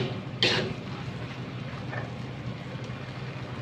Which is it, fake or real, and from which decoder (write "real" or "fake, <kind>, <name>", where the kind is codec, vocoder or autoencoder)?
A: real